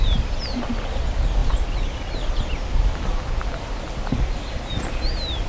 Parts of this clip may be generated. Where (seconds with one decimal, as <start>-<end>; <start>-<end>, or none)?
none